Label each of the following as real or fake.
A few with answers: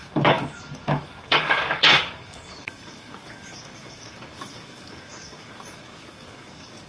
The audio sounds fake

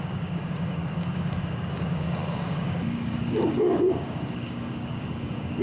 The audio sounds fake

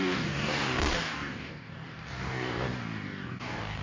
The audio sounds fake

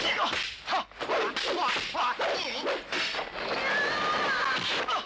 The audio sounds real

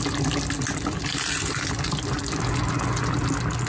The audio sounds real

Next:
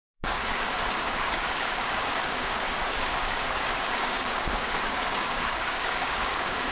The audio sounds fake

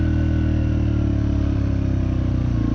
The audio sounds real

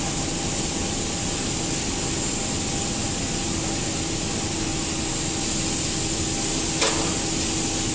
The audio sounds real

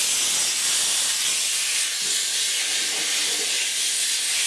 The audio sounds real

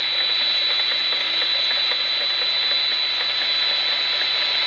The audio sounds real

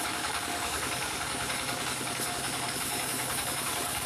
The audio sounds fake